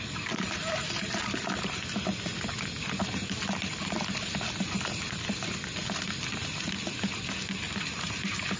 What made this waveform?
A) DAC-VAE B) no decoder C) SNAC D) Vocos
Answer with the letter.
B